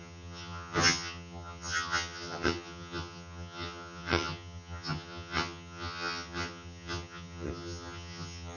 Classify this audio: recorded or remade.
remade